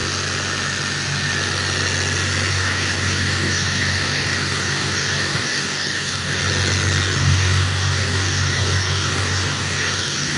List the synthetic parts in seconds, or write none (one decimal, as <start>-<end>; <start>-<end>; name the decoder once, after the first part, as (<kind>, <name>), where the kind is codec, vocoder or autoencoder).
2.5-6.4 (codec, DAC); 7.2-10.4